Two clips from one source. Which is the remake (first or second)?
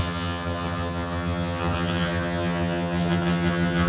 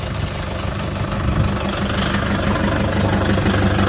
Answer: first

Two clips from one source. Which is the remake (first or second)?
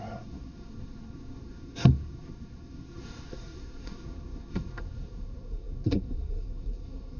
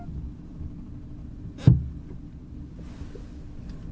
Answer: first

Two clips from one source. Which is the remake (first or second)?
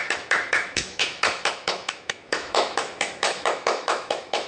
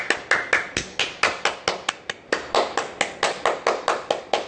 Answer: first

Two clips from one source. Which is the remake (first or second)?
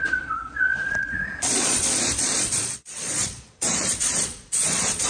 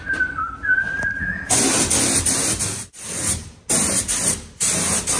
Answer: first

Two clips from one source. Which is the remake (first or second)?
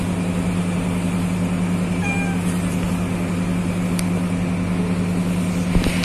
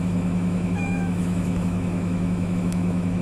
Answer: second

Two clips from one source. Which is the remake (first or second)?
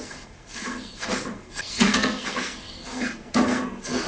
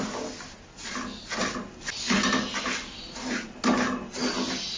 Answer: first